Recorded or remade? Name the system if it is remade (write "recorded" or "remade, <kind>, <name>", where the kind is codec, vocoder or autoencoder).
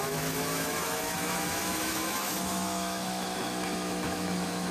remade, autoencoder, DAC-VAE